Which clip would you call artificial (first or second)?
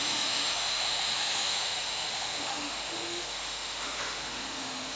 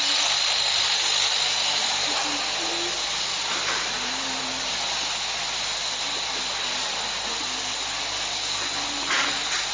first